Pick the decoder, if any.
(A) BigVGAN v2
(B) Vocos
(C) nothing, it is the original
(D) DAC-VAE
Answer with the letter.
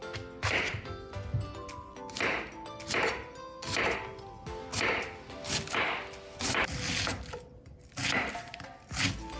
C